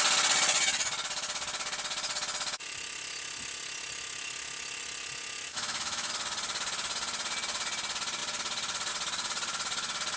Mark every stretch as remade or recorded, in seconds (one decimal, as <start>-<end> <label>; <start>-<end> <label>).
0.0-5.5 recorded; 5.5-6.1 remade; 6.1-10.2 recorded

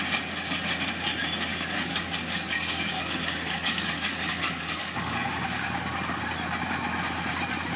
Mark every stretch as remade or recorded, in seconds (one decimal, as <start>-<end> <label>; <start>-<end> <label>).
0.0-1.5 recorded; 1.5-6.2 remade; 6.2-7.8 recorded

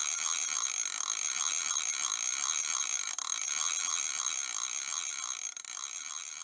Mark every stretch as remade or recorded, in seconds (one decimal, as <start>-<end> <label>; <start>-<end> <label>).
0.0-6.4 recorded

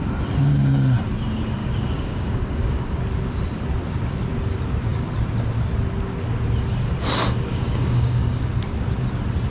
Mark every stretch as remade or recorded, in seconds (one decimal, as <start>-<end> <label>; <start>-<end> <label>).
0.0-1.6 recorded; 1.6-3.0 remade; 3.0-7.5 recorded; 7.5-8.5 remade; 8.5-9.5 recorded